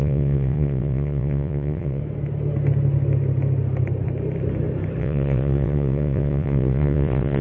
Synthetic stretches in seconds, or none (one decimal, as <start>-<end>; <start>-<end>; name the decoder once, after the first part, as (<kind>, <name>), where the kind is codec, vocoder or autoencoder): 0.0-2.0 (vocoder, WaveNeXt); 5.0-7.4